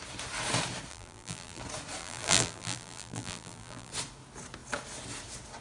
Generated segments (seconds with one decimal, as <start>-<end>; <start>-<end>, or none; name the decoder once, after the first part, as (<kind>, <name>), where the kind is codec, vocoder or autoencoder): 0.9-1.6 (vocoder, BigVGAN v2); 2.0-3.9